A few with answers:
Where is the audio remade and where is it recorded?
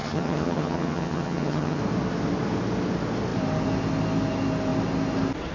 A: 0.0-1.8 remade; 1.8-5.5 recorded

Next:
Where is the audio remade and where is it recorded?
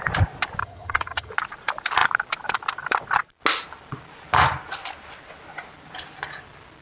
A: 0.0-0.6 recorded; 0.6-1.3 remade; 1.3-6.8 recorded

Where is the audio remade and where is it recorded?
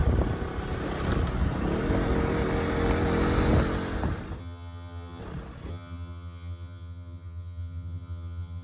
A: 0.0-4.4 recorded; 4.4-5.2 remade; 5.2-5.7 recorded; 5.7-8.6 remade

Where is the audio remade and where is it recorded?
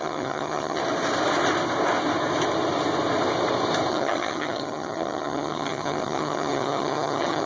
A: 0.0-0.8 remade; 0.8-3.9 recorded; 3.9-7.5 remade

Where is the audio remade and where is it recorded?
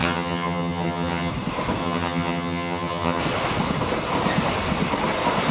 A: 0.0-1.3 remade; 1.3-1.8 recorded; 1.8-3.2 remade; 3.2-5.5 recorded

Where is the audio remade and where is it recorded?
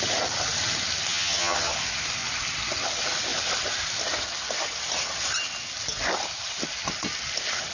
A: 0.0-1.1 recorded; 1.1-1.7 remade; 1.7-7.7 recorded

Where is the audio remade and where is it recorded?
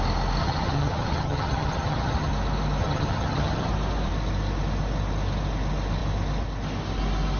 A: 0.0-0.4 recorded; 0.4-2.3 remade; 2.3-2.8 recorded; 2.8-3.7 remade; 3.7-7.4 recorded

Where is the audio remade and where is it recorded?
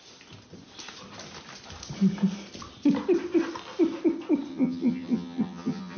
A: 0.0-4.5 recorded; 4.5-6.0 remade